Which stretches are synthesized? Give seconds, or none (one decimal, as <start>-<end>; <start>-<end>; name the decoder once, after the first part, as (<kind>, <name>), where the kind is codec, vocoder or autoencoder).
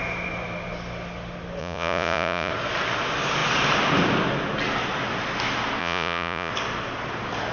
1.6-2.5 (vocoder, Vocos); 5.8-6.5